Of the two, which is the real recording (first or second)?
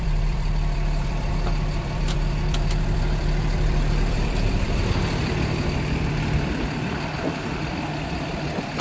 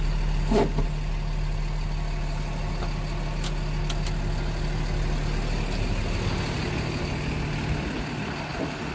second